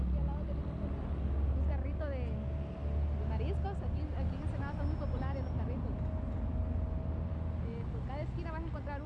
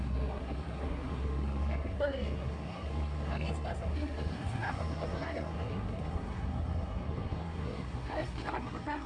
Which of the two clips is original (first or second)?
first